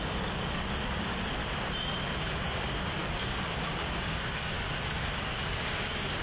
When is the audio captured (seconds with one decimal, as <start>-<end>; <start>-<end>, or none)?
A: 1.4-2.3